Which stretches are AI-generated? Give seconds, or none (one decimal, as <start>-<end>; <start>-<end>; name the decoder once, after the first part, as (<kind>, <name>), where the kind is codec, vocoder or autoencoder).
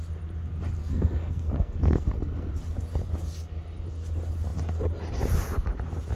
0.8-2.5 (codec, SNAC)